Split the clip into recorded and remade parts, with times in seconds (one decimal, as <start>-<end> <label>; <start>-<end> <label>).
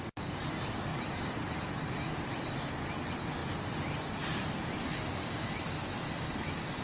0.0-6.8 recorded